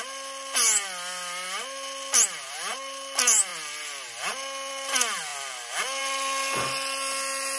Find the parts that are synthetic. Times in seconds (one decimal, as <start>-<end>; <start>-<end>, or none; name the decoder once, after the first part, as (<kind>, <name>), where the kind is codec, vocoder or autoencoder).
none